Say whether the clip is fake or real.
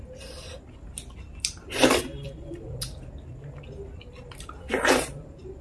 real